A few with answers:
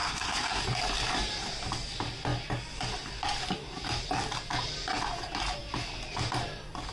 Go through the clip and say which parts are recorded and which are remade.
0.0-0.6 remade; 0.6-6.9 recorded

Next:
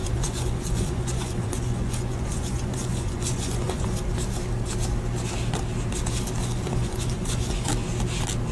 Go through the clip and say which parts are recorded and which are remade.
0.0-3.9 remade; 3.9-6.4 recorded; 6.4-7.7 remade; 7.7-8.5 recorded

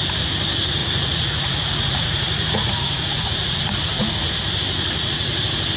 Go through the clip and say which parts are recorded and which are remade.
0.0-0.8 recorded; 0.8-4.3 remade; 4.3-5.8 recorded

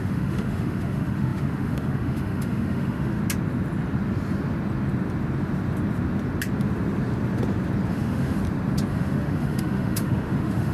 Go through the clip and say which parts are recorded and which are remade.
0.0-3.2 remade; 3.2-7.9 recorded; 7.9-8.4 remade; 8.4-8.9 recorded; 8.9-10.7 remade

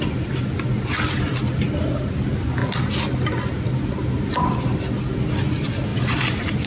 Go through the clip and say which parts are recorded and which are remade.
0.0-5.9 recorded; 5.9-6.7 remade